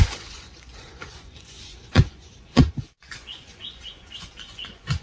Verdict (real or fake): fake